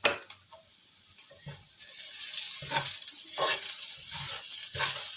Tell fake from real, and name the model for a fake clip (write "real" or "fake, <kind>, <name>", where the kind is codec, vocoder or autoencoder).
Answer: real